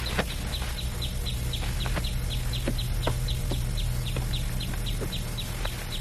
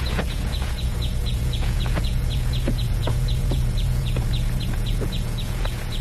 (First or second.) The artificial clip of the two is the second